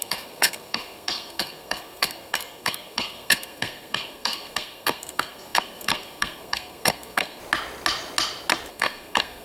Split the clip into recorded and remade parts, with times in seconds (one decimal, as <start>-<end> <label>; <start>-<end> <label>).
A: 0.0-7.4 remade; 7.4-8.7 recorded; 8.7-9.4 remade